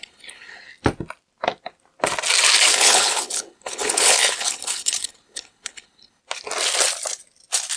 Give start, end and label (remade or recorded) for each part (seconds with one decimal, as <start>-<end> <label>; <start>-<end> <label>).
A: 0.0-0.7 remade; 0.7-2.7 recorded; 2.7-6.2 remade; 6.2-7.8 recorded

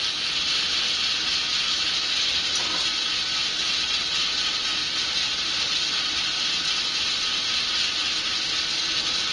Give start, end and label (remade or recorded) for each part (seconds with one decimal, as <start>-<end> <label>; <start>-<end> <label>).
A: 0.0-9.3 recorded

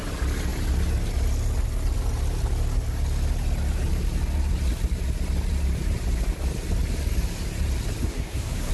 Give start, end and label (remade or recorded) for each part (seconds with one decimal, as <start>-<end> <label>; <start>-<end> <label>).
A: 0.0-8.0 recorded; 8.0-8.7 remade

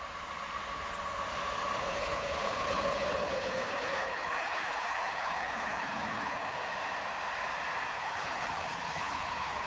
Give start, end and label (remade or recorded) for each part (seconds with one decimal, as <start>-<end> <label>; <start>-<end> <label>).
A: 0.0-1.9 recorded; 1.9-6.6 remade; 6.6-7.9 recorded; 7.9-9.7 remade

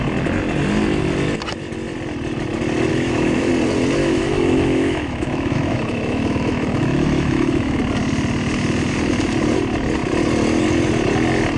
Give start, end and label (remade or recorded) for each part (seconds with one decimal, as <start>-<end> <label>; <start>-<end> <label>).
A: 0.0-2.9 recorded; 2.9-3.5 remade; 3.5-4.0 recorded; 4.0-7.8 remade; 7.8-11.6 recorded

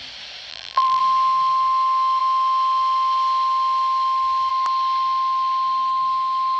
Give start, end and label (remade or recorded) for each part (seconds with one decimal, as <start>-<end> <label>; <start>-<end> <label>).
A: 0.0-0.5 recorded; 0.5-1.0 remade; 1.0-6.6 recorded

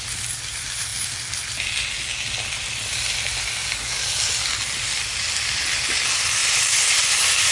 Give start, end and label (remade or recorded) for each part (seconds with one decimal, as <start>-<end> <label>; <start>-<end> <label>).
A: 0.0-3.6 recorded; 3.6-4.1 remade; 4.1-7.5 recorded

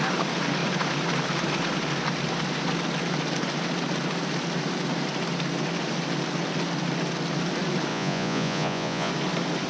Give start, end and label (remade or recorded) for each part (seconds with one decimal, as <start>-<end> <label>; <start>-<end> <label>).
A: 0.0-7.9 recorded; 7.9-9.1 remade; 9.1-9.7 recorded